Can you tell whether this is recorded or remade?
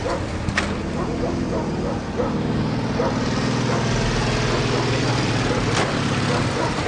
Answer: recorded